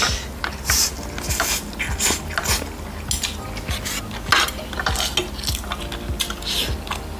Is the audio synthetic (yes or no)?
no